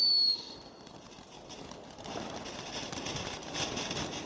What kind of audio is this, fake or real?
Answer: real